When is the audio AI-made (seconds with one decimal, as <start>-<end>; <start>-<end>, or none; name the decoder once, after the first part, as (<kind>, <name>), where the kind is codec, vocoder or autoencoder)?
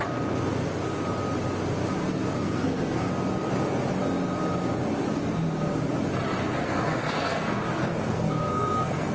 2.0-3.1 (codec, SNAC); 6.4-9.1